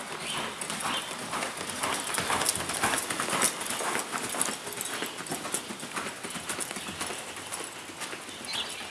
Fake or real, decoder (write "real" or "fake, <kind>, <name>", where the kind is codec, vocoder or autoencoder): real